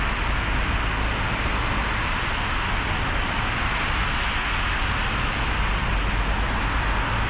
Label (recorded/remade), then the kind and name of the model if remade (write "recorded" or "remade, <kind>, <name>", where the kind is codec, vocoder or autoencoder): recorded